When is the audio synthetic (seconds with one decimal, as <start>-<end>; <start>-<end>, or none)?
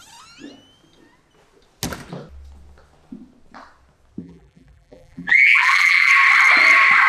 4.2-6.1